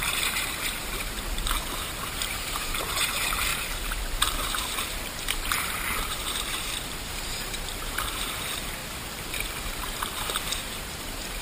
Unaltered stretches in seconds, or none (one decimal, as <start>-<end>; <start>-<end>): 8.8-9.6

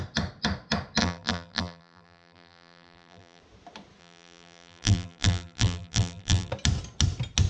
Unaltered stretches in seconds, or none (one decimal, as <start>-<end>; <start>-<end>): 0.0-1.0; 3.4-4.0; 6.5-7.5

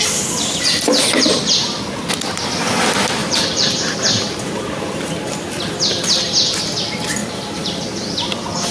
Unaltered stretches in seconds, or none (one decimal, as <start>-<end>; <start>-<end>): 0.0-3.2; 5.5-7.2

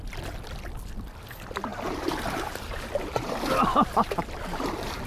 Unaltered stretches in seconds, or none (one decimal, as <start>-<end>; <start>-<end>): 0.0-1.7

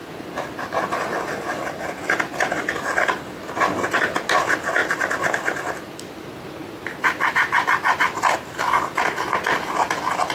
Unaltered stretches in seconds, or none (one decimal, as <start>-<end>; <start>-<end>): 0.0-4.8; 8.6-10.3

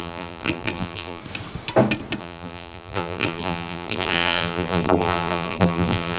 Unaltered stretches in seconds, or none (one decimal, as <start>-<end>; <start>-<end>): 1.2-2.2